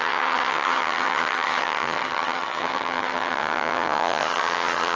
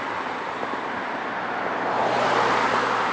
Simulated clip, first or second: first